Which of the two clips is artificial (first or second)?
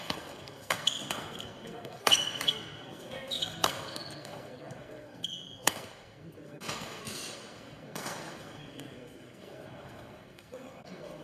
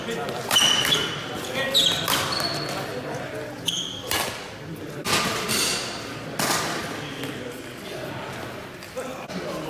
first